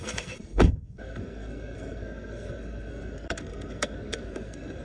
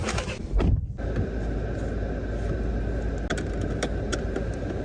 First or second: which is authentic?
second